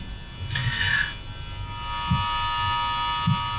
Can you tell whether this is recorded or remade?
recorded